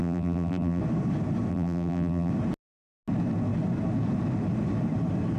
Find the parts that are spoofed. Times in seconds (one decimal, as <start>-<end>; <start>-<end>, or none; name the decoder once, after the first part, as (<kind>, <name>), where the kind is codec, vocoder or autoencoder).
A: 0.0-0.8 (vocoder, BigVGAN v2); 1.5-2.3